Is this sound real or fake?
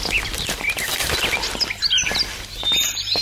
real